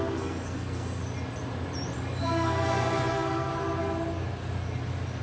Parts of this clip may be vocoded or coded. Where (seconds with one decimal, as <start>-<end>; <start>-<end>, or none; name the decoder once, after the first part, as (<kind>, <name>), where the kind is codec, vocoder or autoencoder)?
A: 0.0-1.0 (codec, SNAC); 2.2-3.5